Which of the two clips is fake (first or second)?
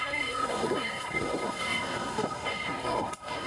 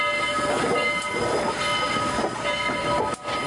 first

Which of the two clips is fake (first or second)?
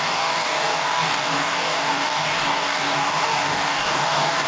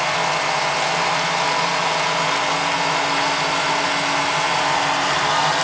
first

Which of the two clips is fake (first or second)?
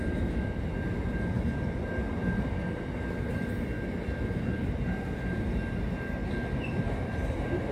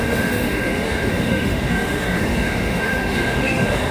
second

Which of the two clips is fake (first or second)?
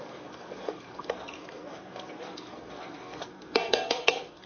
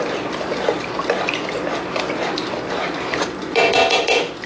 first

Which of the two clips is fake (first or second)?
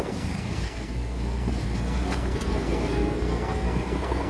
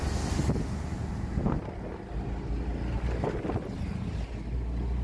first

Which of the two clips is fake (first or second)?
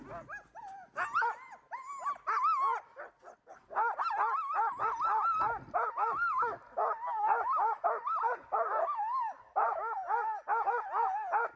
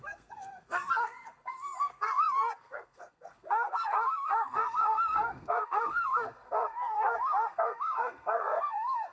second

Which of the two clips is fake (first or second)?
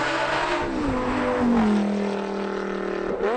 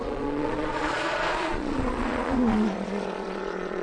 second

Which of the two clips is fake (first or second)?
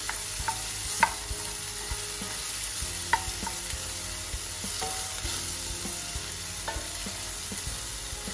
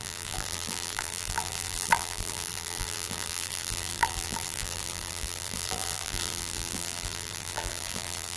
second